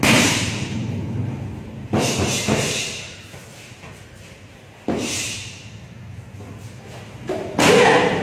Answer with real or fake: real